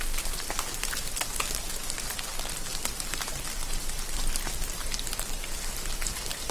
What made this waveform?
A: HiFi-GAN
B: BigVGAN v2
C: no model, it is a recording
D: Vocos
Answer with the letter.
C